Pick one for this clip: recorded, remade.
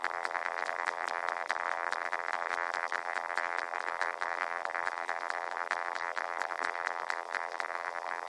remade